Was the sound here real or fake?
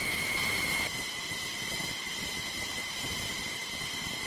real